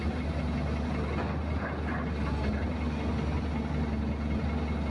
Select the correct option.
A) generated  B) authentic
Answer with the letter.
B